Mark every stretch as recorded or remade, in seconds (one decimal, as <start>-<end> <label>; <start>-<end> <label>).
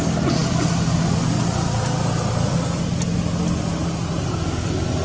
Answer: 0.0-5.0 recorded